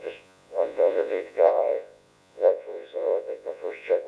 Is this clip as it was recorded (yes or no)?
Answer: no